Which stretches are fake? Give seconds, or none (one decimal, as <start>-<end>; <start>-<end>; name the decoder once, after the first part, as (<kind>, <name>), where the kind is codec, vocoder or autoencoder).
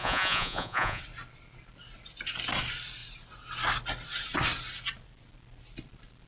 0.0-1.0 (vocoder, Vocos)